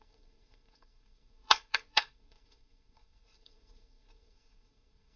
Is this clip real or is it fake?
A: fake